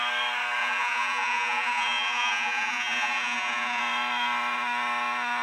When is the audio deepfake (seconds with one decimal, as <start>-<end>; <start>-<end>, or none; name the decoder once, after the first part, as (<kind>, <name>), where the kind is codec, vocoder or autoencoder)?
0.6-3.8 (vocoder, Vocos)